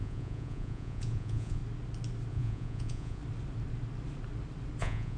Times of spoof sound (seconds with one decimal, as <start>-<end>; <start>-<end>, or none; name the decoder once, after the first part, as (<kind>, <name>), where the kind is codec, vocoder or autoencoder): 0.0-1.6 (vocoder, Vocos); 2.3-3.2; 4.8-5.2